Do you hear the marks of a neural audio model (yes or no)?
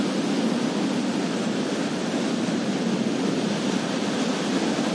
no